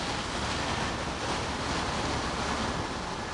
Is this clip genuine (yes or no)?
yes